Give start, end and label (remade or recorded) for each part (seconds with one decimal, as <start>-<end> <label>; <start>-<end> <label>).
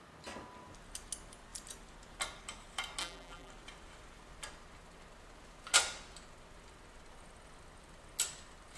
0.0-3.0 recorded; 3.0-3.5 remade; 3.5-8.8 recorded